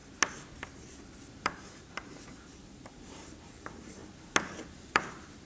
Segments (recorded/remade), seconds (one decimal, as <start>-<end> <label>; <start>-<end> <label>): 0.0-1.4 recorded; 1.4-4.0 remade; 4.0-4.7 recorded; 4.7-5.5 remade